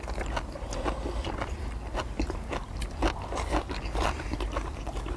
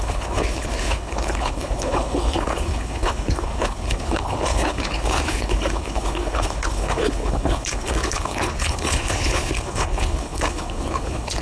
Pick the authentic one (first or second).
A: first